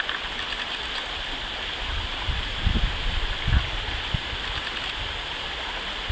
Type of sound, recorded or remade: recorded